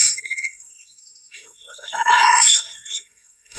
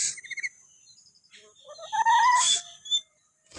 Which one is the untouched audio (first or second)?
second